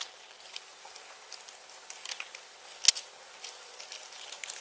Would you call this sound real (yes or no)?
yes